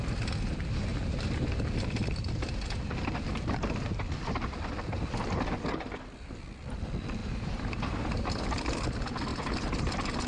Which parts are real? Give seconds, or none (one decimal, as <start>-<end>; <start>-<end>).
0.0-0.9; 1.5-7.2; 8.4-9.3; 9.9-10.3